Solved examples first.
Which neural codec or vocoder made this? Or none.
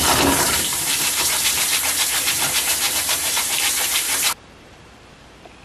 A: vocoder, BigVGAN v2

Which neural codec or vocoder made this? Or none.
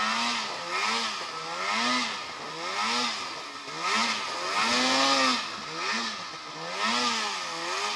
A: none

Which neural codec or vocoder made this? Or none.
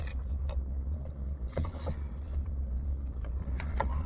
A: vocoder, Vocos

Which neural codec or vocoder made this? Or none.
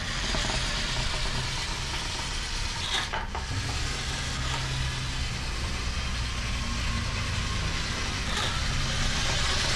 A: none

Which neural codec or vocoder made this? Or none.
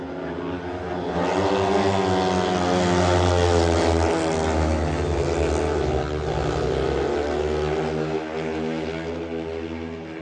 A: none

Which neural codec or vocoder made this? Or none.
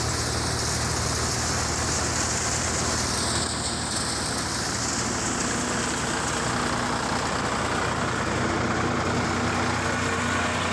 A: none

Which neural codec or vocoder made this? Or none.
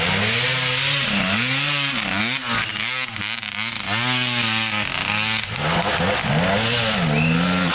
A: none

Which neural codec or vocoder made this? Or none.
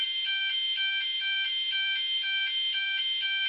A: vocoder, BigVGAN v2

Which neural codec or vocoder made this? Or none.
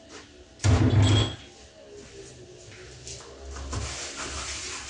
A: none